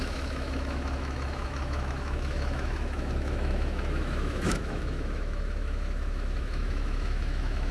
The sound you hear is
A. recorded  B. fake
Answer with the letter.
B